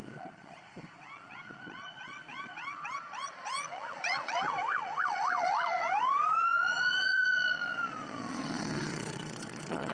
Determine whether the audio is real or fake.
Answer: fake